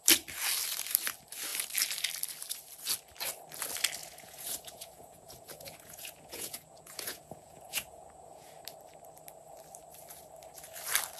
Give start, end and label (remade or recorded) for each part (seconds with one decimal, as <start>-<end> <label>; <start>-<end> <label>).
0.0-4.0 recorded; 4.0-8.5 remade; 8.5-11.2 recorded